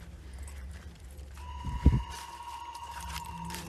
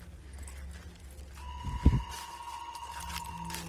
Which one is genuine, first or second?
second